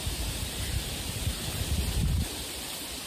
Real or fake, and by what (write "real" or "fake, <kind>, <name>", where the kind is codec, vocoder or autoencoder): real